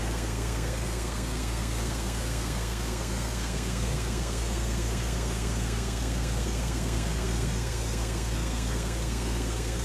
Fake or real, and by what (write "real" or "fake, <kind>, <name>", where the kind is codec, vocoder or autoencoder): fake, codec, SNAC